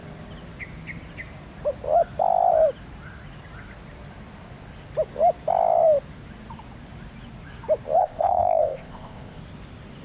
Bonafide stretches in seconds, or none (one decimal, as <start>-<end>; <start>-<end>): 0.0-8.0; 9.4-10.0